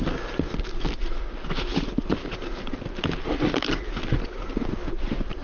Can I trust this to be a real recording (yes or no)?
no